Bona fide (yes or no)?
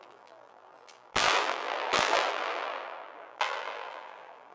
no